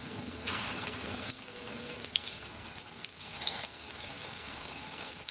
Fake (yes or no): yes